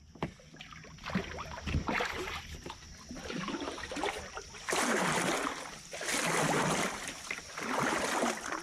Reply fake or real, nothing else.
real